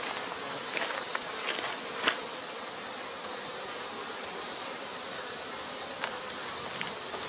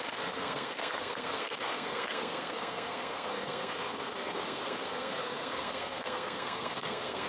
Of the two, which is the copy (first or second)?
second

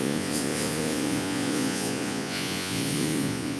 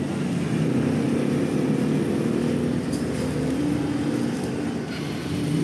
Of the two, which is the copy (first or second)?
first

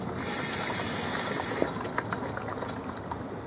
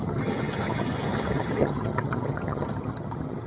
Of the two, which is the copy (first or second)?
second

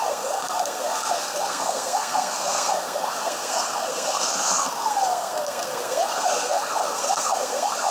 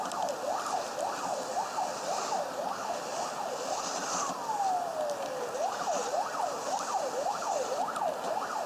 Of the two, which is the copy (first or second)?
first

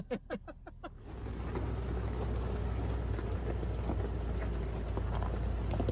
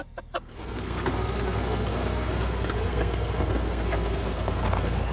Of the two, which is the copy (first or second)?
second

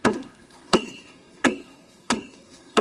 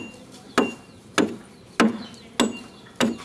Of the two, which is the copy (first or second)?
first